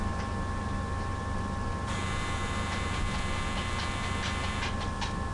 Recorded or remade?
remade